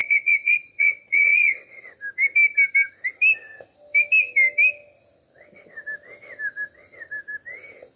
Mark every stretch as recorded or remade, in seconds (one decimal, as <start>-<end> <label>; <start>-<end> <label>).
0.0-1.9 remade; 1.9-8.0 recorded